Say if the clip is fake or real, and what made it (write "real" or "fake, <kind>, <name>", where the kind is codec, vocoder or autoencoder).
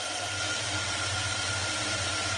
real